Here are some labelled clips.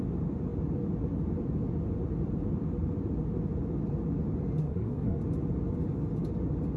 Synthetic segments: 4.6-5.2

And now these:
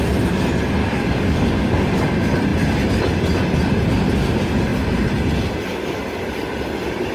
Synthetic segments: 0.8-2.0

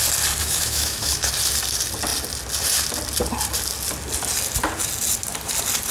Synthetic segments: 0.4-1.3

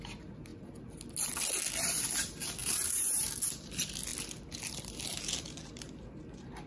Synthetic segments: 2.6-3.4

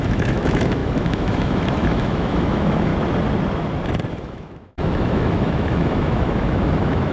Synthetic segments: 0.0-2.9; 4.1-7.1

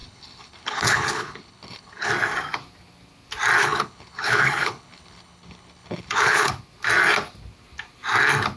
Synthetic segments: 0.0-2.1; 3.6-6.5

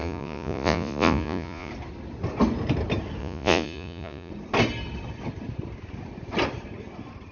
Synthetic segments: 0.0-1.7; 3.2-4.3

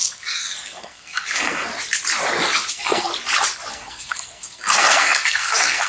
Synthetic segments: 0.0-1.7; 2.7-3.1; 3.7-5.9